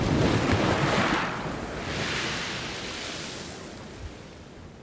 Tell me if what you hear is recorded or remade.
recorded